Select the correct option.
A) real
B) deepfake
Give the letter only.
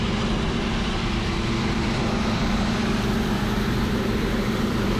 B